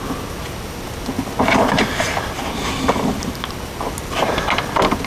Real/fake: real